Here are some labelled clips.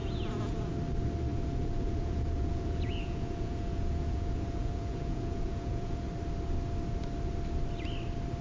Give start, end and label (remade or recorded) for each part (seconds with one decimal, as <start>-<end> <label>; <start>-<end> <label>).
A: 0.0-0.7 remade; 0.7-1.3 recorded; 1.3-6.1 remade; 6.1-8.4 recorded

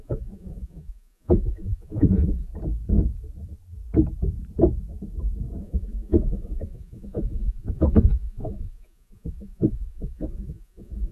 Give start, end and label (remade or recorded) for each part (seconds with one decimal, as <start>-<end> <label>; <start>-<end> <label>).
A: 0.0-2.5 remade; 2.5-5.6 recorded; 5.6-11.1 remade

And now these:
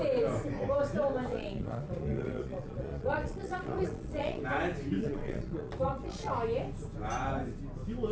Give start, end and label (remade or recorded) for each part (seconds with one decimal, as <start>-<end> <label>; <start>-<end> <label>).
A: 0.0-1.3 recorded; 1.3-4.4 remade; 4.4-5.0 recorded; 5.0-6.3 remade; 6.3-8.1 recorded

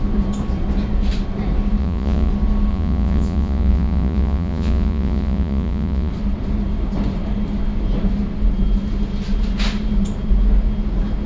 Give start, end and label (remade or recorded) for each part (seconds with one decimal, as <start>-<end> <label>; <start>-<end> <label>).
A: 0.0-1.8 recorded; 1.8-2.3 remade; 2.3-2.7 recorded; 2.7-6.1 remade; 6.1-11.3 recorded